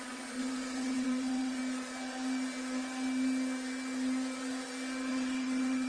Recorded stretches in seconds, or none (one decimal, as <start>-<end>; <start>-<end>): 1.6-5.1